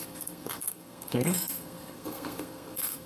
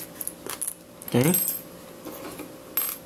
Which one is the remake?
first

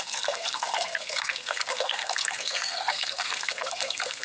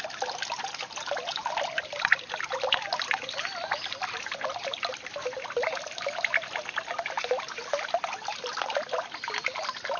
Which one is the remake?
first